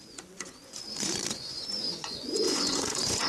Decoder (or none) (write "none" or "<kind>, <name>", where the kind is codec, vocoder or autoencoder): vocoder, Vocos